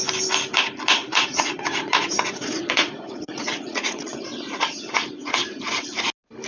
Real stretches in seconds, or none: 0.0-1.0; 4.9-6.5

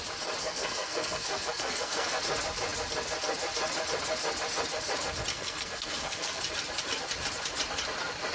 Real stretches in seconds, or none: 0.0-0.4; 2.2-5.3; 6.4-8.3

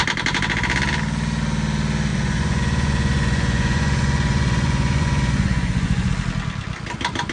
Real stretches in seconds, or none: 0.0-2.1; 6.1-7.3

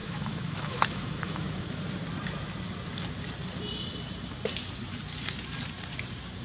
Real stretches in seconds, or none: 1.8-6.4

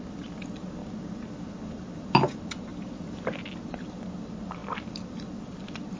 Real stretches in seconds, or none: 0.0-2.7; 3.7-4.6; 5.1-6.0

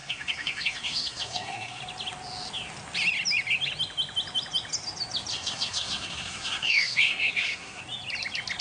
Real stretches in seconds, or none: 1.8-5.3; 7.8-8.6

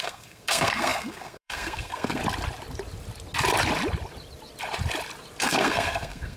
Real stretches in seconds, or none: 2.2-5.4